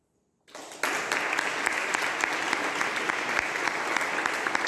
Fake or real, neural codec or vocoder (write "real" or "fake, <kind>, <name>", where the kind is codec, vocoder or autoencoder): real